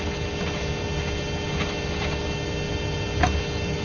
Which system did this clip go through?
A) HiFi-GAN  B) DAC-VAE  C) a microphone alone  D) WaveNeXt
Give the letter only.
C